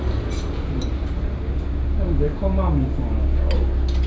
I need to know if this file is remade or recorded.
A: recorded